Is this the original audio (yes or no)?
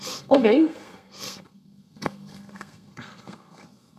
no